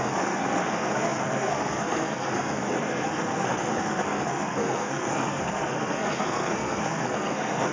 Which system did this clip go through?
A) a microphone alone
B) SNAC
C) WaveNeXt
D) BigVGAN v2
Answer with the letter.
B